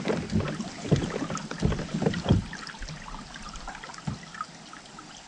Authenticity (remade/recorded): recorded